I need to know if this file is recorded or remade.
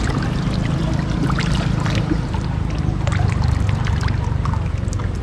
recorded